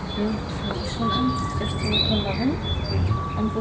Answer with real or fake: real